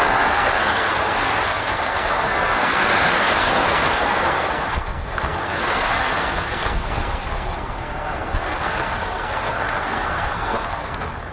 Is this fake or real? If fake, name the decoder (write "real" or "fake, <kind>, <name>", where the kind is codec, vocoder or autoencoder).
fake, codec, SNAC